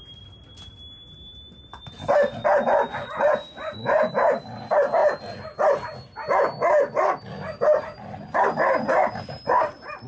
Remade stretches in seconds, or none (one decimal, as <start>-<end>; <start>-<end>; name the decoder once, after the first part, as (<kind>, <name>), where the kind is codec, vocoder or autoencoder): 2.9-4.1 (vocoder, Vocos)